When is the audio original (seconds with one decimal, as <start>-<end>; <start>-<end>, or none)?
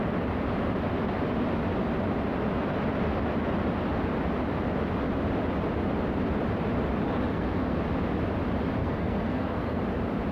0.0-7.3; 7.8-8.8; 9.8-10.3